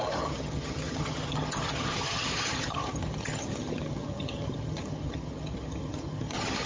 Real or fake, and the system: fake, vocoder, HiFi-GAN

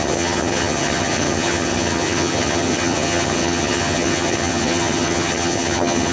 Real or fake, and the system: fake, vocoder, HiFi-GAN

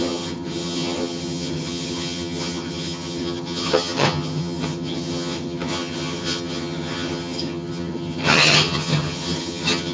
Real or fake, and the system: fake, vocoder, HiFi-GAN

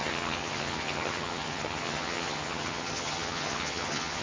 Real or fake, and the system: fake, vocoder, HiFi-GAN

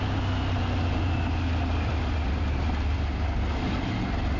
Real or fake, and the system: real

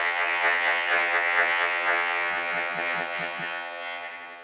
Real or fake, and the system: fake, vocoder, HiFi-GAN